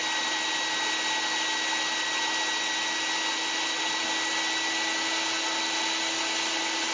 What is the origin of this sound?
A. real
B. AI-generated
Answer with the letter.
A